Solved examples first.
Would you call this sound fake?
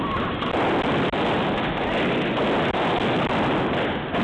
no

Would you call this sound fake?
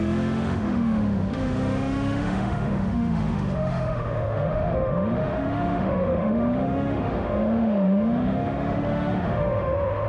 yes